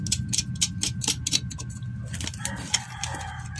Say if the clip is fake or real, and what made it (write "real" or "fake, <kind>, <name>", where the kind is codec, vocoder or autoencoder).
real